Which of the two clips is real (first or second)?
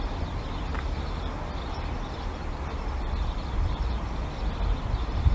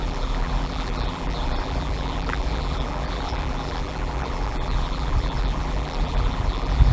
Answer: first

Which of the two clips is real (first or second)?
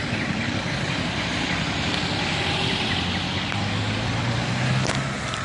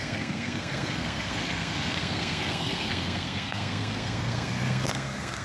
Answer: first